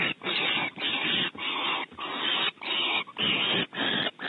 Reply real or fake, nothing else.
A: real